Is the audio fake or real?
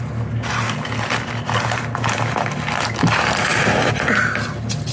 real